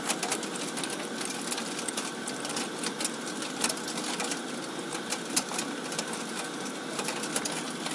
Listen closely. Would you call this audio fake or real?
real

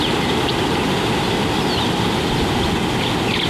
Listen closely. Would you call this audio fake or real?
real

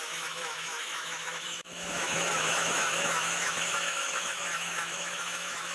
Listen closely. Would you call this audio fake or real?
fake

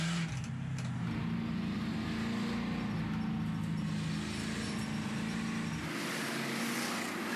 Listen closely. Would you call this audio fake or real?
real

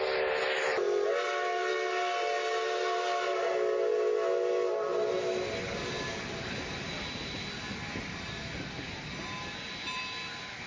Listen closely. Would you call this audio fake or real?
real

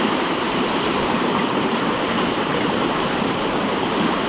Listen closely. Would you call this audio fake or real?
fake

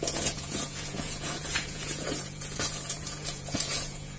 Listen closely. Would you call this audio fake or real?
fake